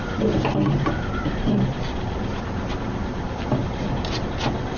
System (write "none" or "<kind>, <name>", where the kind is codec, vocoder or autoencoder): none